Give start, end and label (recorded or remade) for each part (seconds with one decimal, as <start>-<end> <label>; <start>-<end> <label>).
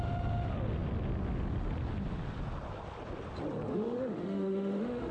0.0-3.7 recorded; 3.7-5.1 remade